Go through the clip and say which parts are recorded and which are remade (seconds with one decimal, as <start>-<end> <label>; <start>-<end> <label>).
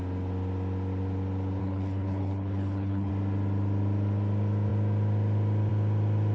0.0-1.6 recorded; 1.6-3.1 remade; 3.1-6.3 recorded